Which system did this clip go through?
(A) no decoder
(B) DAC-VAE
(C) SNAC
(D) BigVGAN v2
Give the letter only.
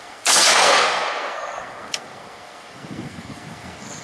C